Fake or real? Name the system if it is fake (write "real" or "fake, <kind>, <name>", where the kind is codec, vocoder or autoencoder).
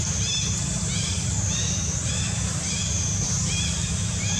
real